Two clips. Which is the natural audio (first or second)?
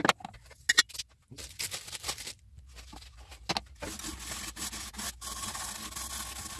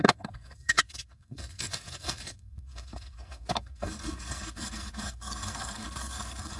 first